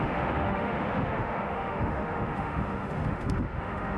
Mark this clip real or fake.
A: fake